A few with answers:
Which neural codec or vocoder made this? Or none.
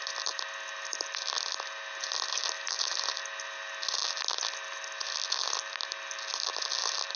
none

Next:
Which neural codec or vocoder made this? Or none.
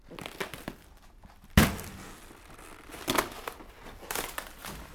none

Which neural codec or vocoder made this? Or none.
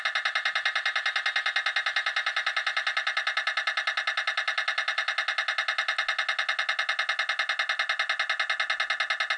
none